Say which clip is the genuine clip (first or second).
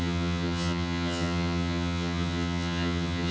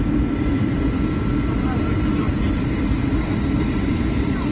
second